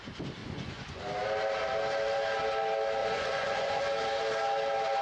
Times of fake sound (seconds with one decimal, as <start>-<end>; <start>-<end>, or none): 0.4-1.0; 3.0-3.8